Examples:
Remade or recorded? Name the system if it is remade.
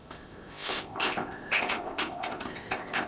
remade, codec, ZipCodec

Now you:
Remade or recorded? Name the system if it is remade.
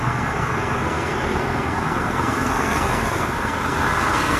remade, codec, SNAC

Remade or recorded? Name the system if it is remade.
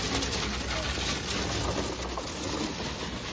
recorded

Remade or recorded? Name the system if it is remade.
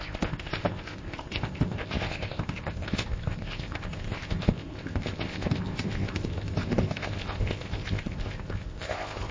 remade, codec, ZipCodec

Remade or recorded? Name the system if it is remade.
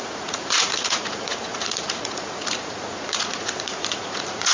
remade, vocoder, Vocos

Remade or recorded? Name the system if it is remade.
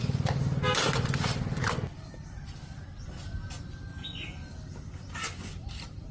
recorded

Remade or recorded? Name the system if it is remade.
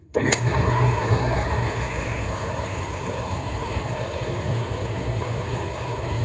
remade, codec, SNAC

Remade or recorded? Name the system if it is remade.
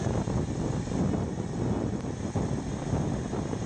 recorded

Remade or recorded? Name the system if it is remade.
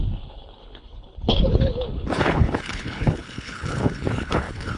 remade, codec, HILCodec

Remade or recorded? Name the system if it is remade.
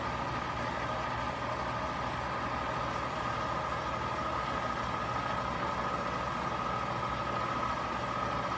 recorded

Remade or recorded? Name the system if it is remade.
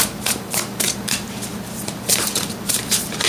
remade, vocoder, BigVGAN v2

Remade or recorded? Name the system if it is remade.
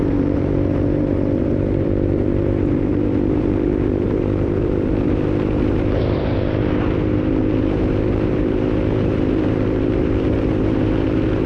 remade, vocoder, BigVGAN v2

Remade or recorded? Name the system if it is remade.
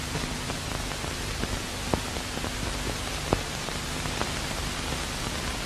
recorded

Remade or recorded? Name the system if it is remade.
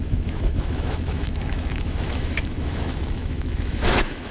remade, autoencoder, DAC-VAE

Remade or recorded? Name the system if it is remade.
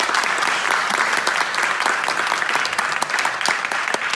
recorded